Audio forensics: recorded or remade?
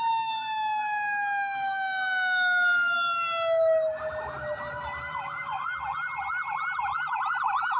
recorded